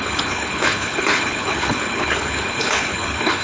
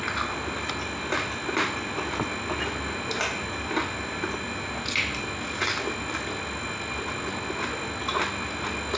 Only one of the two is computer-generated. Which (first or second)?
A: first